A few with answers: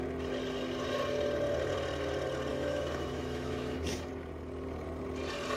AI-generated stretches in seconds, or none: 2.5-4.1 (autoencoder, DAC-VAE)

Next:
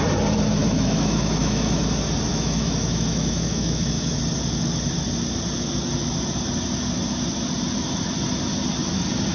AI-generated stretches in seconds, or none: 0.6-1.8 (autoencoder, DAC-VAE); 2.3-4.2

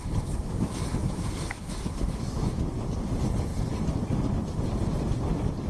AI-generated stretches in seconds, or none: 1.0-2.6 (autoencoder, DAC-VAE)

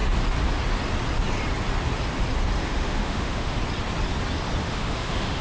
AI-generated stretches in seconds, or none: 2.6-3.6 (autoencoder, DAC-VAE); 4.6-5.4